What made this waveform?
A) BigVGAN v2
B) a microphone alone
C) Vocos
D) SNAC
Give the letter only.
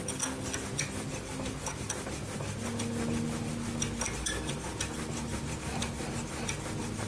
B